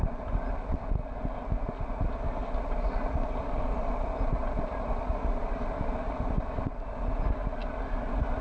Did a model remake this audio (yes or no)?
no